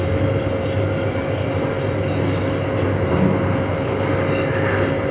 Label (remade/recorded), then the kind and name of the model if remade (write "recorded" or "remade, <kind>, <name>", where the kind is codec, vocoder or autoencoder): recorded